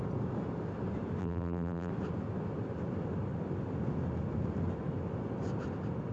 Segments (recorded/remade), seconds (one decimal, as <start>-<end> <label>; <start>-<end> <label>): 0.0-1.2 recorded; 1.2-1.9 remade; 1.9-6.1 recorded